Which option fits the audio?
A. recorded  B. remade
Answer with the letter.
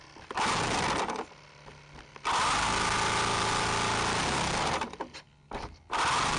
A